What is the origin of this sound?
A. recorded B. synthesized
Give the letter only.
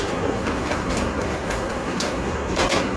B